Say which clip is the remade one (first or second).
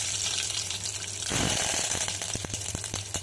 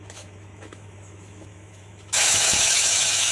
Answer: second